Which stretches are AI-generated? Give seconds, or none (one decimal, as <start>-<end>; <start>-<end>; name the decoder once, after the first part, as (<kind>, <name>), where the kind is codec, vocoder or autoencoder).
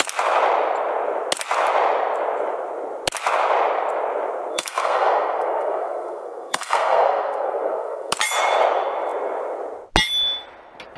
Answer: 4.5-8.1 (codec, SNAC)